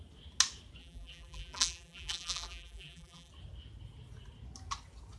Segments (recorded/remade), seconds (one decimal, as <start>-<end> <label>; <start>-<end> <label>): 0.0-0.8 recorded; 0.8-3.3 remade; 3.3-5.2 recorded